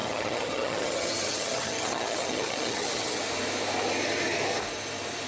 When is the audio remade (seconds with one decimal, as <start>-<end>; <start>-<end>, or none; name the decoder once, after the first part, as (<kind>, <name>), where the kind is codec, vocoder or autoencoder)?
0.0-3.2 (vocoder, HiFi-GAN)